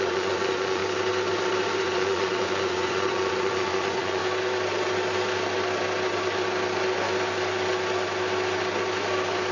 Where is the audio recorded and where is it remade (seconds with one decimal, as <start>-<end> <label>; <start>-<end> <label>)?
0.0-0.8 remade; 0.8-1.8 recorded; 1.8-4.2 remade; 4.2-9.5 recorded